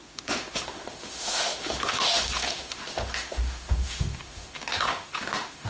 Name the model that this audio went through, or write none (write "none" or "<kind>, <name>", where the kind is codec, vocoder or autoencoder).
autoencoder, DAC-VAE